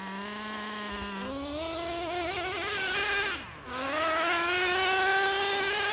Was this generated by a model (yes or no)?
no